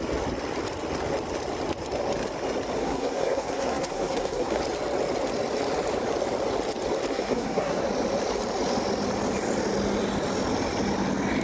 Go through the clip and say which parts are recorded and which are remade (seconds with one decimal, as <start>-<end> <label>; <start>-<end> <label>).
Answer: 0.0-2.8 recorded; 2.8-4.6 remade; 4.6-7.1 recorded; 7.1-7.8 remade; 7.8-11.4 recorded